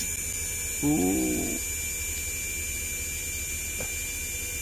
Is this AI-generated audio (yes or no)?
no